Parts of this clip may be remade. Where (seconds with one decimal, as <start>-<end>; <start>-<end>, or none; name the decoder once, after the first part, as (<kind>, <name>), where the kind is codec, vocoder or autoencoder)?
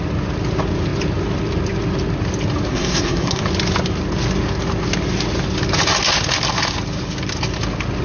2.7-3.4 (codec, SNAC)